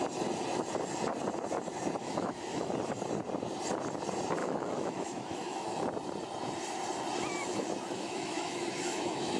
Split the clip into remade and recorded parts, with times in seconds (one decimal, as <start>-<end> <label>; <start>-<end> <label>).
0.0-2.0 recorded; 2.0-2.7 remade; 2.7-4.4 recorded; 4.4-5.8 remade; 5.8-7.5 recorded; 7.5-9.4 remade